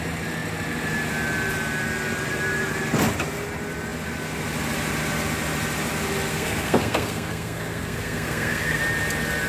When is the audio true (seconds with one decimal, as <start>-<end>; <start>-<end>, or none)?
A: 0.0-6.3; 8.8-9.5